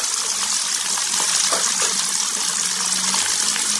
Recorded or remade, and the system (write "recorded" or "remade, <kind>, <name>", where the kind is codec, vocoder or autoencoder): recorded